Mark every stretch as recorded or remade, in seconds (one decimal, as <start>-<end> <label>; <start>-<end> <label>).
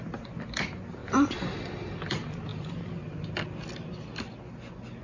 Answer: 0.0-5.0 recorded